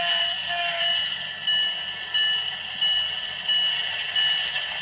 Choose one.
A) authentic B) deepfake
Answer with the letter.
A